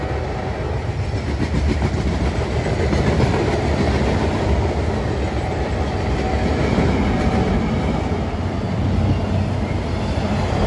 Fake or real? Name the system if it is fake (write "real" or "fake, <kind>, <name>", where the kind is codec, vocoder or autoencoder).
real